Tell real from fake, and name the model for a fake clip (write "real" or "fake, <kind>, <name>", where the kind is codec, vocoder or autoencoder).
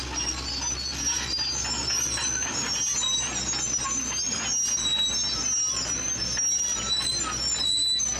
real